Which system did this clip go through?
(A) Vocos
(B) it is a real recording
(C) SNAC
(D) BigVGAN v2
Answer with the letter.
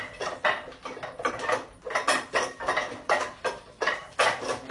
B